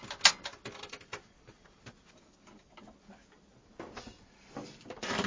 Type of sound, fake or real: real